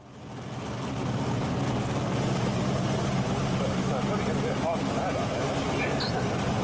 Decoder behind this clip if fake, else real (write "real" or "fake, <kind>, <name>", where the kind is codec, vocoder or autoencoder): real